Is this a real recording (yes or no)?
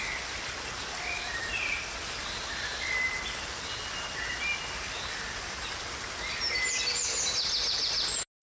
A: yes